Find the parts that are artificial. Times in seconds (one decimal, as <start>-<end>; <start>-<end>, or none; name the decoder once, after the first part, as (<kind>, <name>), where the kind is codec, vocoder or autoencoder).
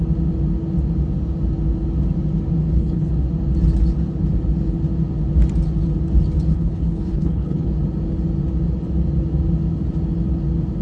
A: 2.6-3.1 (codec, HILCodec); 6.5-7.7